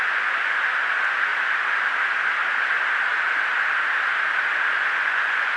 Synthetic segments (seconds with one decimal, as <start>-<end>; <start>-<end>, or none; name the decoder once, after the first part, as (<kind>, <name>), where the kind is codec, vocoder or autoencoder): 0.0-1.3 (vocoder, Vocos); 4.7-5.6